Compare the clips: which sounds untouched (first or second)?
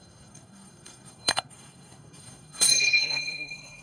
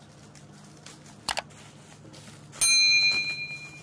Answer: second